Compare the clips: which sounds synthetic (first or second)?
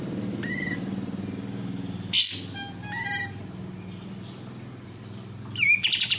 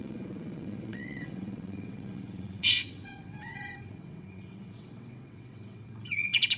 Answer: second